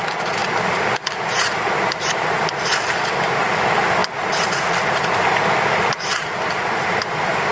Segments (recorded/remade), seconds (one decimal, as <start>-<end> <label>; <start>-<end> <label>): 0.0-7.5 recorded